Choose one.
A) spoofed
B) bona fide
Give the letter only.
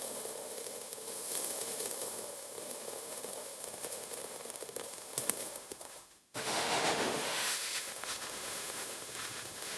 A